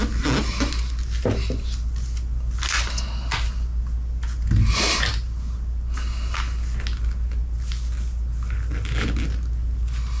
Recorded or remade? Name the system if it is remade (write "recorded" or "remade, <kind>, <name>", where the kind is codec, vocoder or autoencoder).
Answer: recorded